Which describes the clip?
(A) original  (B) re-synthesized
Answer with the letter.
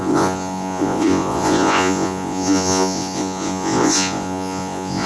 B